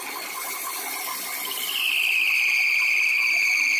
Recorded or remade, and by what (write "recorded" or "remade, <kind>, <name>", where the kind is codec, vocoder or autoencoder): remade, vocoder, BigVGAN v2